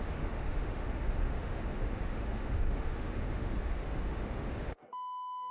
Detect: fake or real fake